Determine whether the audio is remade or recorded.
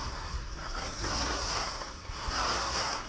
remade